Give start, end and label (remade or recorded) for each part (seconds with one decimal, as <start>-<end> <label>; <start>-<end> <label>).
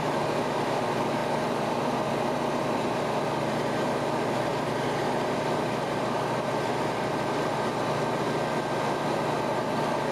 0.0-4.5 recorded; 4.5-7.9 remade; 7.9-10.1 recorded